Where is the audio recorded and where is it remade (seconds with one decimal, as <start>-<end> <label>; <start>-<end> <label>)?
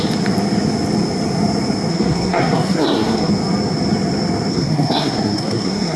0.0-1.9 recorded; 1.9-3.3 remade; 3.3-4.5 recorded; 4.5-6.0 remade